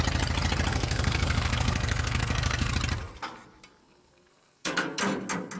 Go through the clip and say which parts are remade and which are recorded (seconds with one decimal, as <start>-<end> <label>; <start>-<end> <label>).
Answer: 0.0-0.7 recorded; 0.7-2.7 remade; 2.7-3.8 recorded; 3.8-5.0 remade; 5.0-5.6 recorded